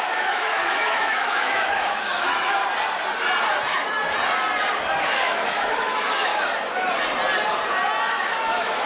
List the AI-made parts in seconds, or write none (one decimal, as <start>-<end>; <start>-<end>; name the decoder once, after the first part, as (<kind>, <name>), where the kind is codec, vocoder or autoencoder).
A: 0.0-2.6 (autoencoder, DAC-VAE); 5.0-6.3; 8.1-8.9